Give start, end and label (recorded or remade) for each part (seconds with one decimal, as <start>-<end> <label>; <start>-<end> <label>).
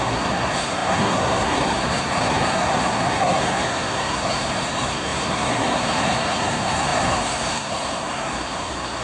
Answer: 0.0-9.0 remade